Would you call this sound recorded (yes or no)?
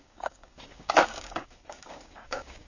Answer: no